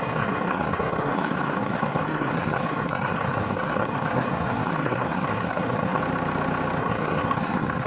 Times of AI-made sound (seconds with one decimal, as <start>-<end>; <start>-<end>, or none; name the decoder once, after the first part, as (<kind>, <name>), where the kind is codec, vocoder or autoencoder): 0.0-6.0 (codec, SNAC); 6.8-7.9